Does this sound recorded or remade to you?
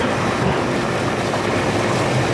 recorded